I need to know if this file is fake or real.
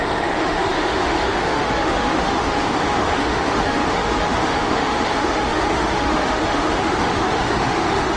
fake